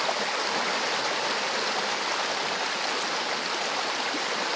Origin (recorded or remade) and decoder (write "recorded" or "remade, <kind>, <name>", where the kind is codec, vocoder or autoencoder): remade, vocoder, BigVGAN v2